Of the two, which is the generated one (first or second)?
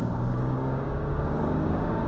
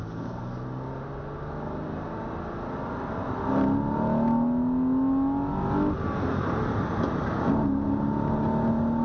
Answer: first